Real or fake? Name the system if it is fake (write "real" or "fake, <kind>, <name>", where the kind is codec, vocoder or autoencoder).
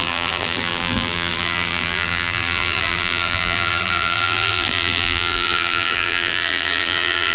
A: fake, vocoder, BigVGAN v2